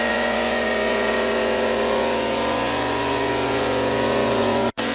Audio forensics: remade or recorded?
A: remade